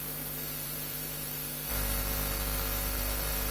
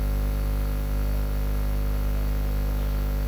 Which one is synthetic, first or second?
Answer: first